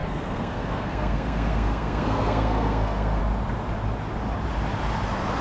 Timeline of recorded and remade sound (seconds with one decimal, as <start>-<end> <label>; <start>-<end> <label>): 0.0-3.2 remade; 3.2-5.4 recorded